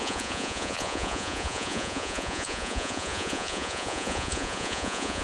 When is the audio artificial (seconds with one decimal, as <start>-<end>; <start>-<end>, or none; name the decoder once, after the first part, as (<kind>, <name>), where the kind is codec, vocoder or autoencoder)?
0.0-5.2 (vocoder, Vocos)